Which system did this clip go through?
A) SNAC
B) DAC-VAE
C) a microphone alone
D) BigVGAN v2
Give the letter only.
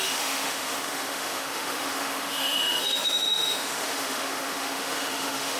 B